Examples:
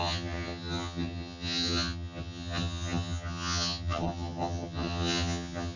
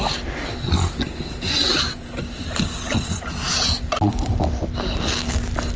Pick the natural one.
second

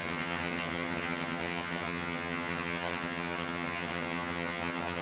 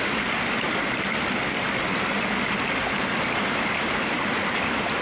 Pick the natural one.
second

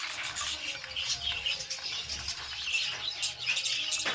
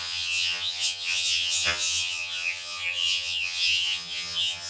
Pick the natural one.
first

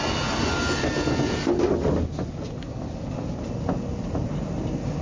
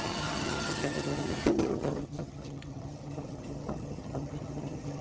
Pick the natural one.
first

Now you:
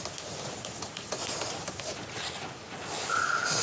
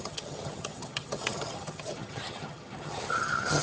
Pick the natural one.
first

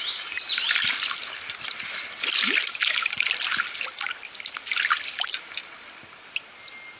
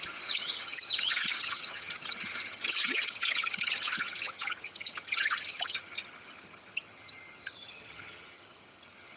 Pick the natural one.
first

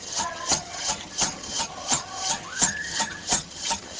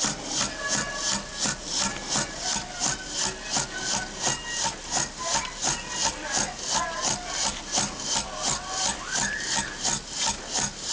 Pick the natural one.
second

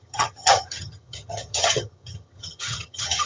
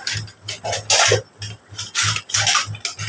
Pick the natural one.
second